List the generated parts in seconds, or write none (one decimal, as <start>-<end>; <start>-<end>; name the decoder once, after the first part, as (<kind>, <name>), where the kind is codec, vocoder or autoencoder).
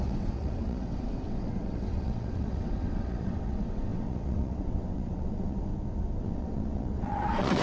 0.0-5.7 (vocoder, WaveNeXt); 6.2-7.6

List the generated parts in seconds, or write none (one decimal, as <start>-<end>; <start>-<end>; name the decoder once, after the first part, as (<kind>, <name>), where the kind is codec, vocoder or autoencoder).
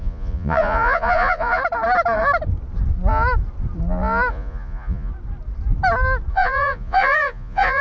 0.0-1.6 (vocoder, Vocos); 4.3-5.1; 6.3-7.8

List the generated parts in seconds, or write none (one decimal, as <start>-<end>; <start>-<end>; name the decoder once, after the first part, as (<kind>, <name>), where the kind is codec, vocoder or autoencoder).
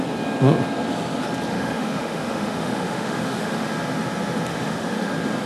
1.5-3.7 (autoencoder, DAC-VAE); 4.5-5.1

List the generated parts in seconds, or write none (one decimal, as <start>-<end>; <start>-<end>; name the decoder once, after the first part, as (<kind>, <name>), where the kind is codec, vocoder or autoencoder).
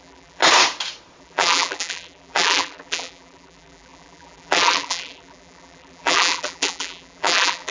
0.0-0.4 (vocoder, BigVGAN v2); 1.2-7.7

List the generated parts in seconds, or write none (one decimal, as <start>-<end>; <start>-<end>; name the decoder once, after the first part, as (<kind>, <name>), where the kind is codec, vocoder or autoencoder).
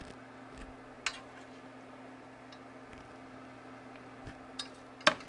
none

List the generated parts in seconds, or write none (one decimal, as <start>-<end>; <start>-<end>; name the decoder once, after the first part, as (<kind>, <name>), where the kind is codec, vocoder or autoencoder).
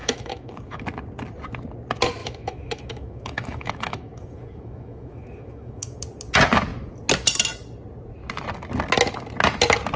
0.0-0.8 (autoencoder, DAC-VAE); 2.2-6.0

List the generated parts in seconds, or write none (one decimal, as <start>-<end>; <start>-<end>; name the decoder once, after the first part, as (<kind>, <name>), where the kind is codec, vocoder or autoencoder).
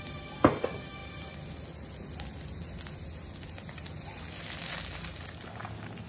none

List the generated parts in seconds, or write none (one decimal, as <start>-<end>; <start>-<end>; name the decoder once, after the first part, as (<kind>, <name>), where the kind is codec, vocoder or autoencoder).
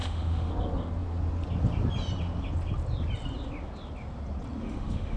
0.0-0.5 (autoencoder, DAC-VAE); 4.6-5.2